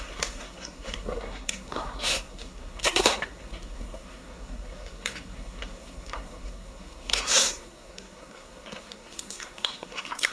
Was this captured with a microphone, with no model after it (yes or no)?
no